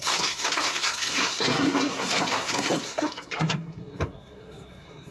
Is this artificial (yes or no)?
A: yes